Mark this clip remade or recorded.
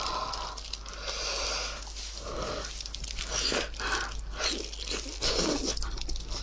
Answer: recorded